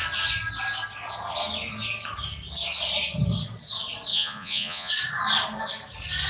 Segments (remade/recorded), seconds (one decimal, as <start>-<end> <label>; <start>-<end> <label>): 0.0-4.1 recorded; 4.1-4.9 remade; 4.9-6.3 recorded